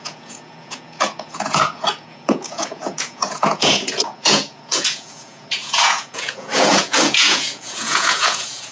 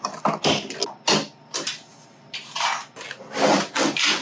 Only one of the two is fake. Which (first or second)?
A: first